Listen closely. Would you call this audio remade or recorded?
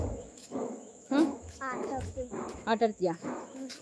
remade